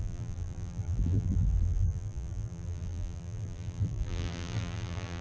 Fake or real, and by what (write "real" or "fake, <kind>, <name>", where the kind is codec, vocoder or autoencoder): fake, vocoder, BigVGAN v2